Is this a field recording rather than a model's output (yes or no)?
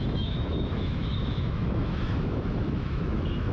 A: no